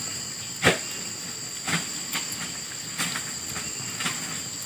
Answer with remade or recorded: recorded